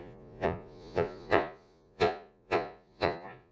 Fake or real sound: fake